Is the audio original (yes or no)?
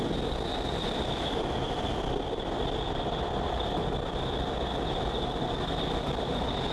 yes